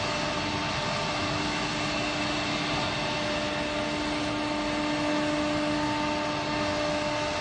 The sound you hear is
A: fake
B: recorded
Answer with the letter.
B